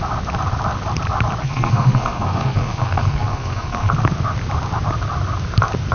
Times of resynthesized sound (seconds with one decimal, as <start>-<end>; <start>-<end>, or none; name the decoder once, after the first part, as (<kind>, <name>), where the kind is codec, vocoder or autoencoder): 1.4-3.9 (codec, SNAC)